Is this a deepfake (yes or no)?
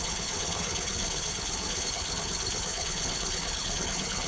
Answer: yes